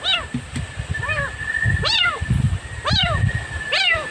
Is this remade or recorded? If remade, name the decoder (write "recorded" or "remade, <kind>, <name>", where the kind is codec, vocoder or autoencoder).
recorded